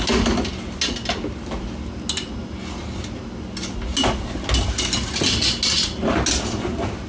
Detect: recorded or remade recorded